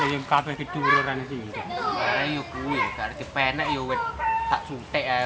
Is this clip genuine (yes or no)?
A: yes